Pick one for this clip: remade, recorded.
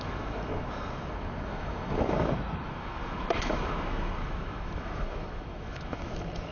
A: remade